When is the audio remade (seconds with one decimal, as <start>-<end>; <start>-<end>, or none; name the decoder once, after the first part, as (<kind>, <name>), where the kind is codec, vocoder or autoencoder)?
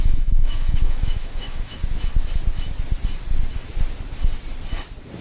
0.0-1.8 (autoencoder, DAC-VAE)